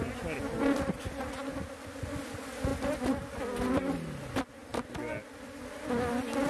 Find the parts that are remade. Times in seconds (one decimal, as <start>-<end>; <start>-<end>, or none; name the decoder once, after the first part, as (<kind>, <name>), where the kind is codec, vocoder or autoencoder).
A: none